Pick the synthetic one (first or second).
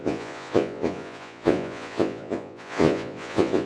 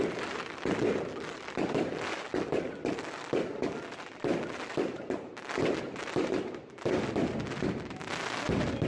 first